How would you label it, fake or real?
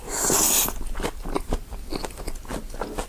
real